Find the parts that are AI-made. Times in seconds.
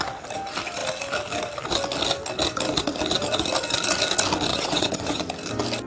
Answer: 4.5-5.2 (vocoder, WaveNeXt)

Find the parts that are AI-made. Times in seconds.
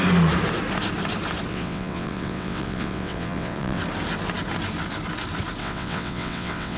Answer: 1.5-3.8 (vocoder, WaveNeXt); 5.6-6.8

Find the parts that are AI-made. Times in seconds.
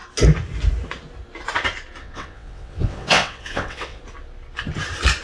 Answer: 2.0-4.0 (vocoder, WaveNeXt)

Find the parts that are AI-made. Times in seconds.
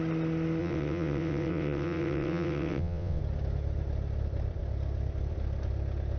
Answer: 0.6-3.2 (vocoder, WaveNeXt)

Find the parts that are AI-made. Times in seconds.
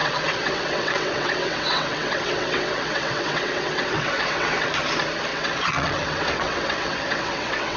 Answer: 0.0-4.7 (vocoder, WaveNeXt); 5.3-7.8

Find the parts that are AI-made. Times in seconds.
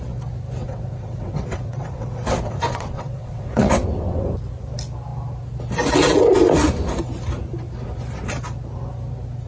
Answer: 0.6-4.3 (vocoder, WaveNeXt)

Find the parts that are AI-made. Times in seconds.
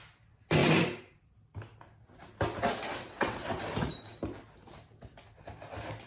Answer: 2.9-3.6 (vocoder, WaveNeXt)